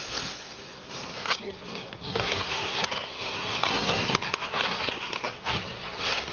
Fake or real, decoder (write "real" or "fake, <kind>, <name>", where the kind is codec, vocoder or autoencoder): fake, codec, SNAC